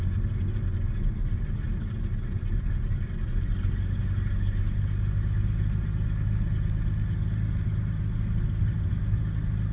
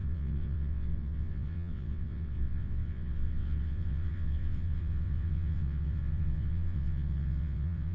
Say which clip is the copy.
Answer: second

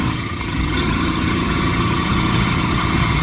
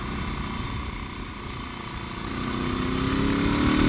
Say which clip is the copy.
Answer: first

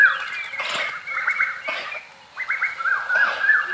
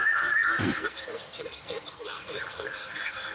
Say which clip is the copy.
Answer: second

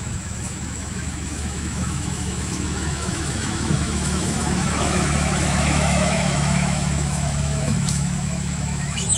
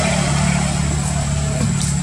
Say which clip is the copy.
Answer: first